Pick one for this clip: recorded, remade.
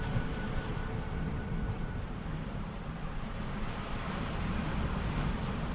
remade